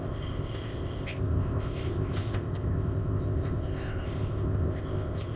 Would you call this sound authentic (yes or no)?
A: no